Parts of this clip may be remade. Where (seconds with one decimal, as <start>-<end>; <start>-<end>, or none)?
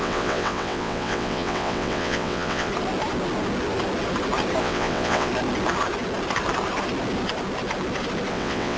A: 0.0-2.7; 4.6-5.3; 8.3-8.8